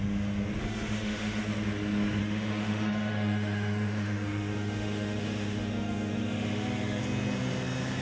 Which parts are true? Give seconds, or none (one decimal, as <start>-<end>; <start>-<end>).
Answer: 0.0-0.6; 1.4-2.2; 7.0-8.0